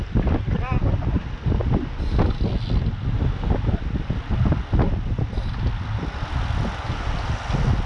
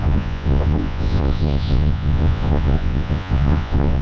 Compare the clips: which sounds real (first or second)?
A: first